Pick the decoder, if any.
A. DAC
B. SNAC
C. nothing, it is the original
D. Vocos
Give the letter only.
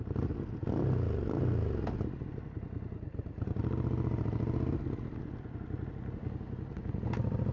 C